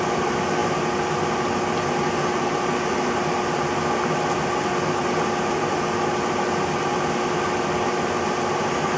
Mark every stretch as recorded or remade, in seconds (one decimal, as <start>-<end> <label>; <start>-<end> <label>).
0.0-9.0 recorded

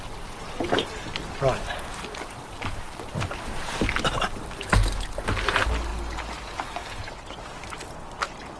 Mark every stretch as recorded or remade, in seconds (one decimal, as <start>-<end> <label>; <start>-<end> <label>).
0.0-8.6 recorded

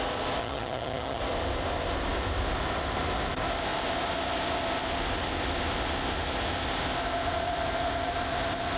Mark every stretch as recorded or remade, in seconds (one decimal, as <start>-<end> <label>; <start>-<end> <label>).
0.0-0.4 recorded; 0.4-1.2 remade; 1.2-8.8 recorded

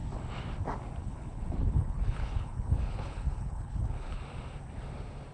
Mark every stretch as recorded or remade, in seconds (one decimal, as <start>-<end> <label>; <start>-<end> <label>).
0.0-1.0 recorded; 1.0-4.2 remade; 4.2-5.3 recorded